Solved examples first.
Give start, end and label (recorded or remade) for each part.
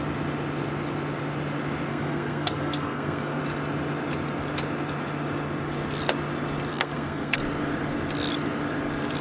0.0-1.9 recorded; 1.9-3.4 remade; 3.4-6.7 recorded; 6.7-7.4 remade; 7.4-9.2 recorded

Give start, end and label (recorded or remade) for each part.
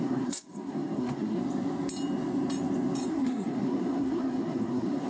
0.0-1.4 remade; 1.4-3.1 recorded; 3.1-5.1 remade